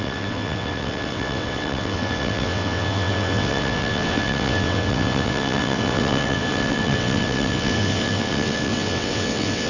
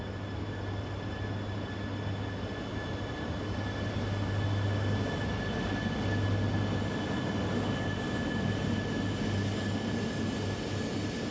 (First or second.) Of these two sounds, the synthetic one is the first